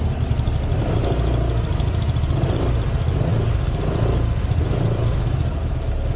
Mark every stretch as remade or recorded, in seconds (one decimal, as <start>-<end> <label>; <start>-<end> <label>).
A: 0.0-6.2 recorded